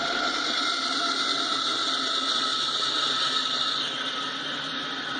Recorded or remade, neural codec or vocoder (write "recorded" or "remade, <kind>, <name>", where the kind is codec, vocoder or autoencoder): recorded